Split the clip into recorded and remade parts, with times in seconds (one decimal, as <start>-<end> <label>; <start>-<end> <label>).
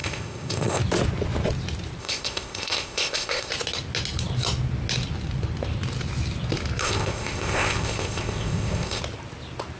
0.0-0.8 remade; 0.8-2.0 recorded; 2.0-3.5 remade; 3.5-6.8 recorded; 6.8-9.0 remade; 9.0-9.8 recorded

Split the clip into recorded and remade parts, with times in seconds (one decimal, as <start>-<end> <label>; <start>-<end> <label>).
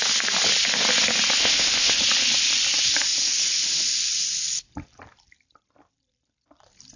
0.0-1.4 recorded; 1.4-2.0 remade; 2.0-7.0 recorded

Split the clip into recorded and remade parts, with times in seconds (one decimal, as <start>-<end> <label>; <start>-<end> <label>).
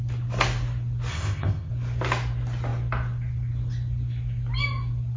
0.0-1.1 recorded; 1.1-1.7 remade; 1.7-5.2 recorded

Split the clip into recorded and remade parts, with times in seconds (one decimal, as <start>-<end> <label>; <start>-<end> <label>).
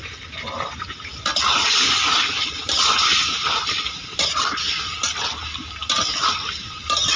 0.0-7.2 recorded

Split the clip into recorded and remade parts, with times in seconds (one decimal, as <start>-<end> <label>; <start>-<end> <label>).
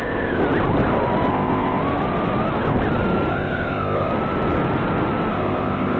0.0-0.4 remade; 0.4-1.3 recorded; 1.3-1.8 remade; 1.8-3.3 recorded; 3.3-4.1 remade; 4.1-5.3 recorded; 5.3-6.0 remade